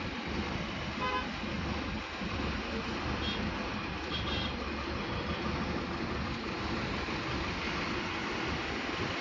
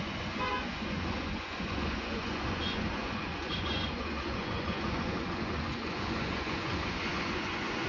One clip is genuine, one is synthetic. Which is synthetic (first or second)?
second